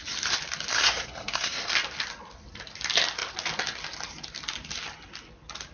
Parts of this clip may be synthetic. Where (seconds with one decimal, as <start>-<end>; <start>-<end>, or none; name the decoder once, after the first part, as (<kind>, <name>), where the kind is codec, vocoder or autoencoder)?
0.7-1.7 (codec, SNAC)